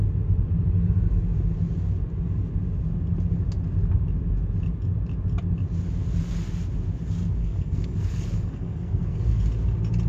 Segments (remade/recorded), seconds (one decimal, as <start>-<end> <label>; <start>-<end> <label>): 0.0-7.4 recorded; 7.4-9.4 remade; 9.4-10.1 recorded